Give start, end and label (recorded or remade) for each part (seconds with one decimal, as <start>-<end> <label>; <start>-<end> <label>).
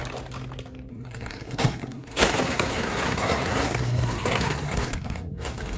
0.0-0.9 recorded; 0.9-5.8 remade